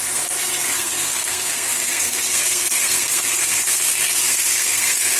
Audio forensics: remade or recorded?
remade